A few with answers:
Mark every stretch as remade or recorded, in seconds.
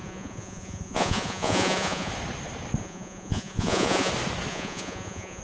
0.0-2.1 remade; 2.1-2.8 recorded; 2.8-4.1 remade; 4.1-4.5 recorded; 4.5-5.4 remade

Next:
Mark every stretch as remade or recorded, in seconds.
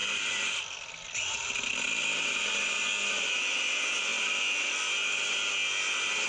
0.0-6.3 recorded